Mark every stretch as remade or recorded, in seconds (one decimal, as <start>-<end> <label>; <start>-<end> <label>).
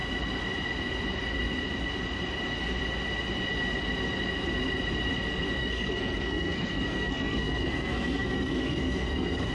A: 0.0-5.6 recorded; 5.6-9.5 remade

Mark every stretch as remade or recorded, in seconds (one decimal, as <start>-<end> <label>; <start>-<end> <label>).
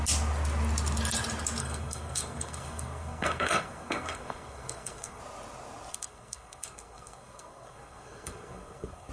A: 0.0-1.6 recorded; 1.6-5.2 remade; 5.2-5.9 recorded; 5.9-9.1 remade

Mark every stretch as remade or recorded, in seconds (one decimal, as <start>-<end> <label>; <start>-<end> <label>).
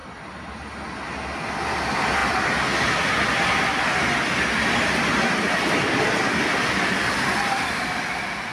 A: 0.0-8.5 recorded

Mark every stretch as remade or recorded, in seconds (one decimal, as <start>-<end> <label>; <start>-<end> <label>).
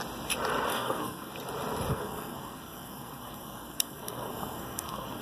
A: 0.0-0.7 recorded; 0.7-1.3 remade; 1.3-1.9 recorded; 1.9-5.2 remade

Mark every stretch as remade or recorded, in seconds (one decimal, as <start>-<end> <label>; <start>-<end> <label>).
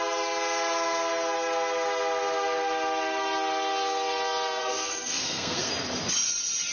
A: 0.0-4.6 recorded; 4.6-5.7 remade; 5.7-6.7 recorded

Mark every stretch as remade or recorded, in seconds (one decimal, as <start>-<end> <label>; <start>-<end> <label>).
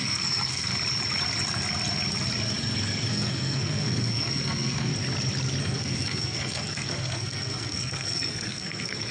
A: 0.0-0.7 remade; 0.7-3.1 recorded; 3.1-4.9 remade; 4.9-5.6 recorded; 5.6-9.1 remade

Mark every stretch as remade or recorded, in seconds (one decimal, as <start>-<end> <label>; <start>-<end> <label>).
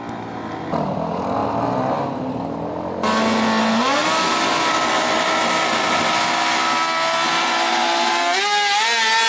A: 0.0-9.3 recorded